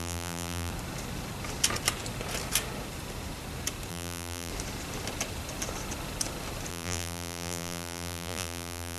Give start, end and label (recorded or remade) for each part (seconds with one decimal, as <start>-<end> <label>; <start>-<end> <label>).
0.0-0.7 remade; 0.7-3.9 recorded; 3.9-4.5 remade; 4.5-6.7 recorded; 6.7-9.0 remade